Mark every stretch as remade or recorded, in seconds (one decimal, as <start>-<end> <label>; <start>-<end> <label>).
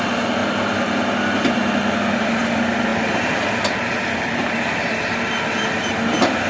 0.0-0.4 remade; 0.4-2.2 recorded; 2.2-6.5 remade